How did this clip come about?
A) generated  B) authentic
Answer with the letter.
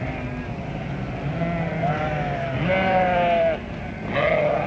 B